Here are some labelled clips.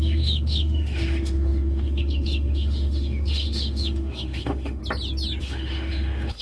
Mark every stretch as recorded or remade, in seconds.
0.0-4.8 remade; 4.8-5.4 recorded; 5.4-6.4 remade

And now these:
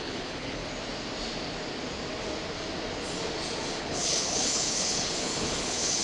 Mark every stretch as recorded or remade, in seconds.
0.0-0.6 remade; 0.6-3.8 recorded; 3.8-6.0 remade

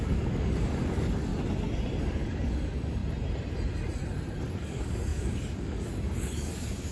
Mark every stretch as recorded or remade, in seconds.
0.0-1.3 remade; 1.3-2.0 recorded; 2.0-3.0 remade; 3.0-4.5 recorded; 4.5-6.9 remade

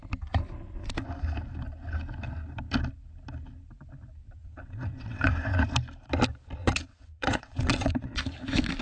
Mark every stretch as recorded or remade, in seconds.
0.0-4.4 recorded; 4.4-5.3 remade; 5.3-6.6 recorded; 6.6-8.2 remade; 8.2-8.8 recorded

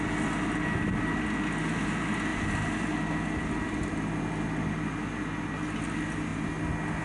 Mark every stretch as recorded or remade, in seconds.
0.0-7.0 recorded

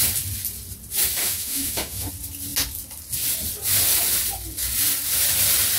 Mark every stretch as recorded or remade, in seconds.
0.0-1.2 recorded; 1.2-2.1 remade; 2.1-5.8 recorded